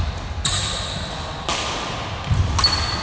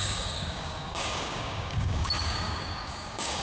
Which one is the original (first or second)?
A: first